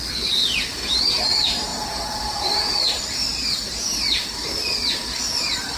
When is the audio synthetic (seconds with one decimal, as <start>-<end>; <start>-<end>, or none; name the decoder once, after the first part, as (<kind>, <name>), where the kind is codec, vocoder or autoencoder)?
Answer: 0.0-3.3 (vocoder, BigVGAN v2)